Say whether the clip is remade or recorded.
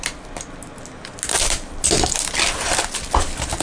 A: recorded